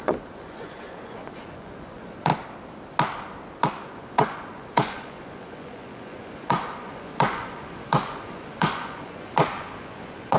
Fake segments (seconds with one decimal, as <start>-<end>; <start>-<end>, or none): 0.0-2.3; 3.8-10.4